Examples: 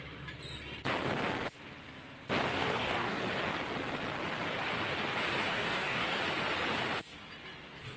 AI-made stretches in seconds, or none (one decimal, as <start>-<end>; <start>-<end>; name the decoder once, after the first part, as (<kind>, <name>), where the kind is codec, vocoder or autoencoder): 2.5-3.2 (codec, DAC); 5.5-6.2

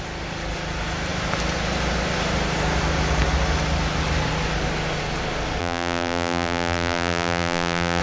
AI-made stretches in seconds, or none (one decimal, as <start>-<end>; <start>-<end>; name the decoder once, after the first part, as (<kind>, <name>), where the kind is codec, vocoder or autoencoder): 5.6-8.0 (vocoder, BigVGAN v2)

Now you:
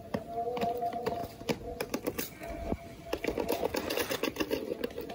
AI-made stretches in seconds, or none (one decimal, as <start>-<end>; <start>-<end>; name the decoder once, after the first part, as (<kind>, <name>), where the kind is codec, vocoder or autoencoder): none